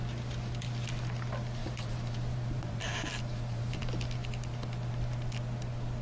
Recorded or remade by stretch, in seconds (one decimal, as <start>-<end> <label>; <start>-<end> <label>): 0.0-1.6 recorded; 1.6-3.8 remade; 3.8-6.0 recorded